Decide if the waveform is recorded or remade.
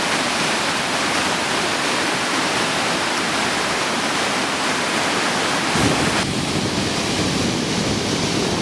recorded